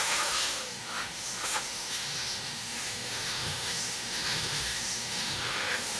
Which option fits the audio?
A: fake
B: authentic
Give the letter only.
A